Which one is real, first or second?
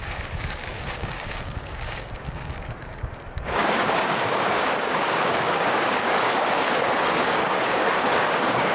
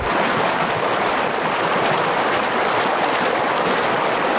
second